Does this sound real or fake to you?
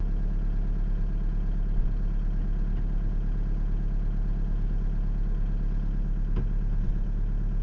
real